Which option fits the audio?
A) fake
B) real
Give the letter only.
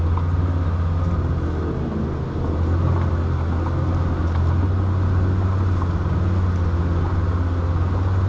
B